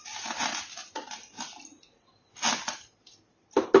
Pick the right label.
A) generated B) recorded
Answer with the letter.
B